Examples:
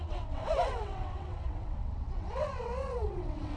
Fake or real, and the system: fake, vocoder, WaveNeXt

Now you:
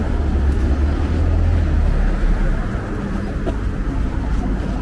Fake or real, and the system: real